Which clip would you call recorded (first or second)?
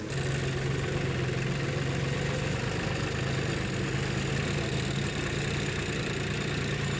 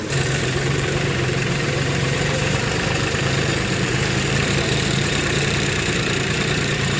first